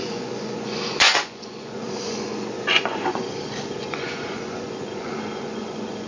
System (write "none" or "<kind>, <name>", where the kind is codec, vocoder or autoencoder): vocoder, Vocos